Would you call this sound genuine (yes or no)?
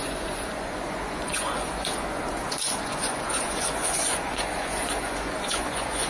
no